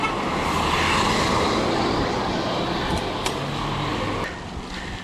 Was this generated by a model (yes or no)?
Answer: no